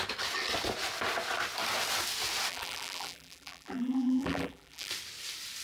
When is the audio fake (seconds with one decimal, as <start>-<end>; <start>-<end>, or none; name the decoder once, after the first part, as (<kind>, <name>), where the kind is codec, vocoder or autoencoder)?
2.5-4.9 (vocoder, BigVGAN v2)